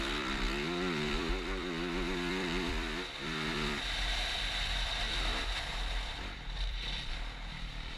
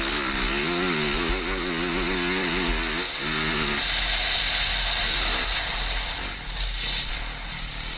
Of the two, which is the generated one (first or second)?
first